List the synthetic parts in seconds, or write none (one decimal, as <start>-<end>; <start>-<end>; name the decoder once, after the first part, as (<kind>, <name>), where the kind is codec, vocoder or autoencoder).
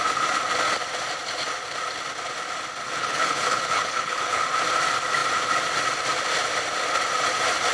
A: 3.0-4.4 (codec, HILCodec)